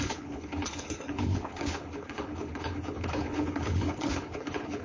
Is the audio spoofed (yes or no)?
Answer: yes